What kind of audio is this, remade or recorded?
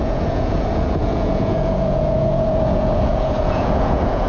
remade